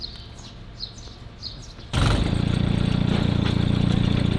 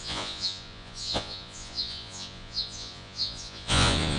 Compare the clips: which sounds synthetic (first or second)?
second